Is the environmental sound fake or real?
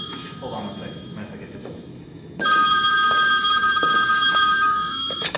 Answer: fake